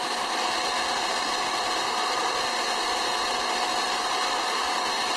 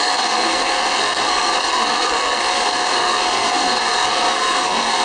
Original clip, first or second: first